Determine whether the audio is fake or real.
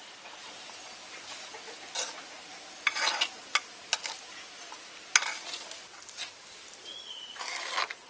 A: real